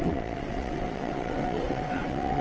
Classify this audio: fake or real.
fake